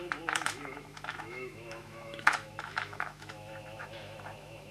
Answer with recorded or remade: remade